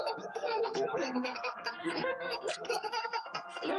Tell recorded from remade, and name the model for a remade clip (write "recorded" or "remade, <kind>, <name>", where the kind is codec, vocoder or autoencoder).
remade, codec, SNAC